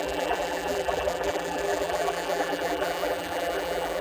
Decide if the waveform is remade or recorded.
remade